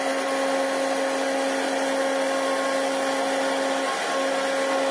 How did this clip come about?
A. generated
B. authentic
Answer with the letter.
B